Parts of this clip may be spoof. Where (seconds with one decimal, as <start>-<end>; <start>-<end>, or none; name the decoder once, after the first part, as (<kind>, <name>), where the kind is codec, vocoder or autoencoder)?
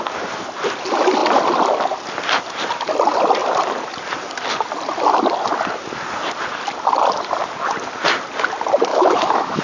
8.9-9.6 (autoencoder, DAC-VAE)